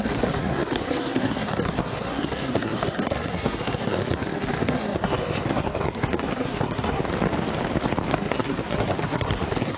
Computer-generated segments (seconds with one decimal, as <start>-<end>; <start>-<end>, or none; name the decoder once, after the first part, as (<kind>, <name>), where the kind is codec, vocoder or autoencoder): 0.0-7.0 (codec, SNAC); 8.1-9.8